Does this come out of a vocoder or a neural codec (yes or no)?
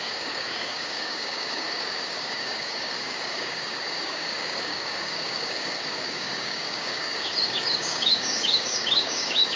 yes